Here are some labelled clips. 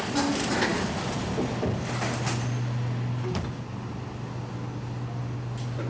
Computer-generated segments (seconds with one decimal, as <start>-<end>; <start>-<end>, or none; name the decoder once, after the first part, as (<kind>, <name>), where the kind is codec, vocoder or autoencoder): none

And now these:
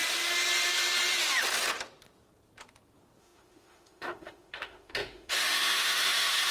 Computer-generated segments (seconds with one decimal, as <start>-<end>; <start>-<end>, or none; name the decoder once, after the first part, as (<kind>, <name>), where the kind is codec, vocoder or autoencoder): 3.2-6.5 (autoencoder, DAC-VAE)

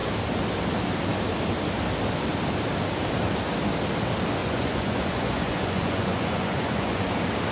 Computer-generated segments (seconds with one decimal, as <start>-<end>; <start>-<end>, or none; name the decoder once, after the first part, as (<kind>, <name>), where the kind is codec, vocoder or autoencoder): 4.4-7.1 (vocoder, Vocos)

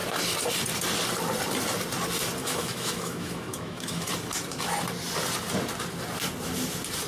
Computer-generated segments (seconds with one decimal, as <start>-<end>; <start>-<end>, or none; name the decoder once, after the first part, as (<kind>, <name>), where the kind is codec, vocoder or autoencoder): 2.4-4.1 (autoencoder, DAC-VAE)

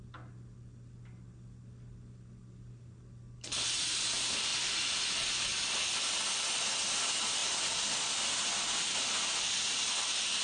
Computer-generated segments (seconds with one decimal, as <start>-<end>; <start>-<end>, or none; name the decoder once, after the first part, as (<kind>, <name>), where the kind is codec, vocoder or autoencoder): 4.5-6.0 (vocoder, BigVGAN v2)

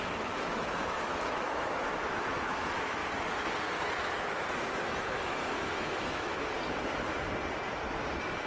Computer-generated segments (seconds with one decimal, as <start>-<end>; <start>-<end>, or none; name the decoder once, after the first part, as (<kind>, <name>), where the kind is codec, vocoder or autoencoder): 0.0-3.0 (autoencoder, DAC-VAE); 4.3-6.3

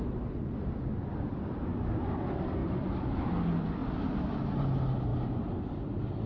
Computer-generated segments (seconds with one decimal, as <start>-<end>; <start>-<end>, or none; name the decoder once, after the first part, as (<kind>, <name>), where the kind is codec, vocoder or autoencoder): 2.6-3.3 (vocoder, BigVGAN v2); 5.1-6.3

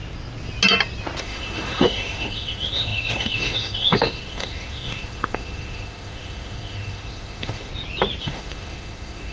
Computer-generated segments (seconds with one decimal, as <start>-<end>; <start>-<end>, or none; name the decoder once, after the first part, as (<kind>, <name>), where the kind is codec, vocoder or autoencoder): 1.2-7.7 (autoencoder, DAC-VAE); 8.2-9.3